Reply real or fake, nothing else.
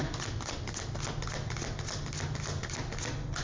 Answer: real